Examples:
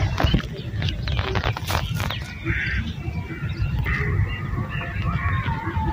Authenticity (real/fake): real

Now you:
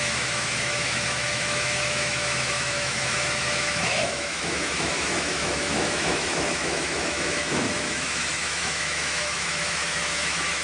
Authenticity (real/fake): fake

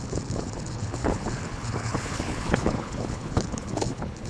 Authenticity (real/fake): fake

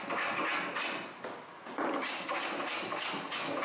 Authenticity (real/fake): real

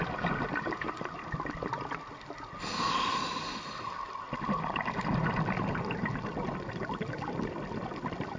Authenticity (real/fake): real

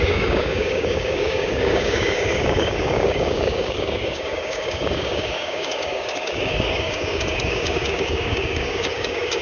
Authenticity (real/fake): fake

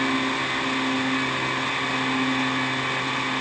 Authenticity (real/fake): real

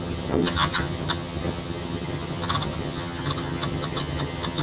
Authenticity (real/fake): fake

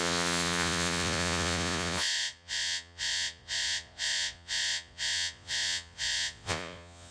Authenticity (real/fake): fake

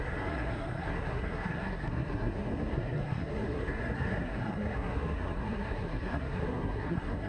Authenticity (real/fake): fake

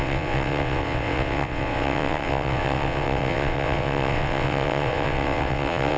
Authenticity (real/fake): fake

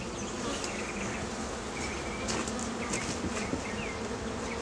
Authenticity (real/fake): real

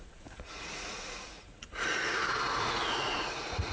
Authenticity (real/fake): fake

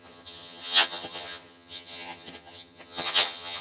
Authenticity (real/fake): fake